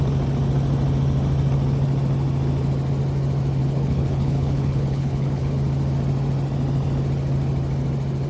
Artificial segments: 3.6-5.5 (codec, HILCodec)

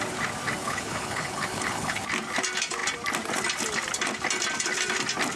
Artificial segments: 0.6-2.0 (codec, HILCodec)

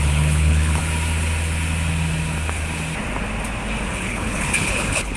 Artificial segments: 0.0-0.8 (codec, HILCodec); 3.9-5.2

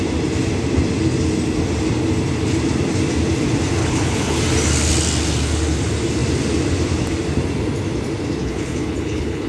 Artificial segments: 3.8-4.4 (codec, HILCodec); 8.4-9.5

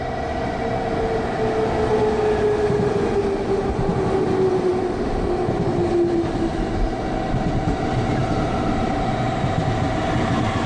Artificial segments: none